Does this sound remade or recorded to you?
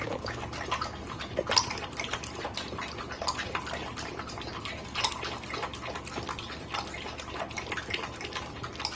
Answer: recorded